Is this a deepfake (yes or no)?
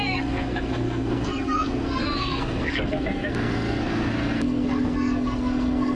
yes